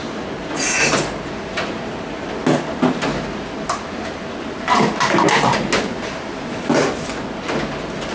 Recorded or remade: recorded